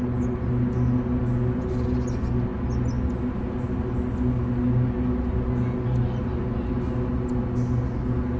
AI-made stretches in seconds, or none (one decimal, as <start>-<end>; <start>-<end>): none